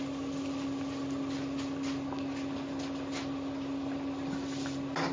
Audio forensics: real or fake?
real